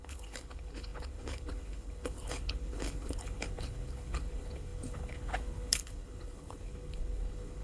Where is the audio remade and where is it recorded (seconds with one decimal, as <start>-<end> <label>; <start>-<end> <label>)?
0.0-7.6 remade